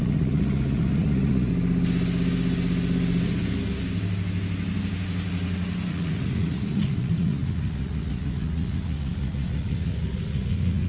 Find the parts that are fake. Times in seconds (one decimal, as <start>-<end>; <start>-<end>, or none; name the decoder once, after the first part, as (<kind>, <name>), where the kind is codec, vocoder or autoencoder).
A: 0.0-1.5 (vocoder, Vocos); 5.9-10.9